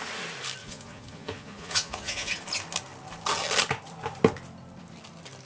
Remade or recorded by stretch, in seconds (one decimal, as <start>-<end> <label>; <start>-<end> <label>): 0.0-0.6 recorded; 0.6-2.3 remade; 2.3-5.5 recorded